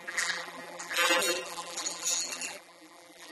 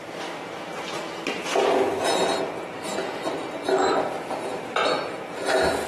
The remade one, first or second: first